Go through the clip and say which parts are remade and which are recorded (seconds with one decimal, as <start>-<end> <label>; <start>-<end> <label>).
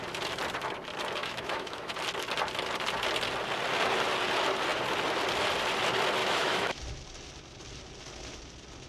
0.0-1.2 recorded; 1.2-1.9 remade; 1.9-6.2 recorded; 6.2-6.8 remade; 6.8-8.9 recorded